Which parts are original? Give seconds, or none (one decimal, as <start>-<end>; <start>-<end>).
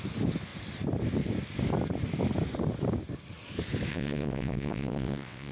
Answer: 0.0-3.9